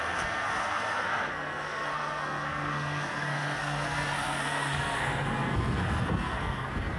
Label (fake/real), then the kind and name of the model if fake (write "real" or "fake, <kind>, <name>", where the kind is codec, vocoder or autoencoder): fake, codec, SNAC